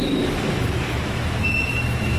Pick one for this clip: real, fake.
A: fake